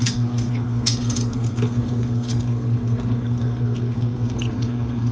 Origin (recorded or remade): remade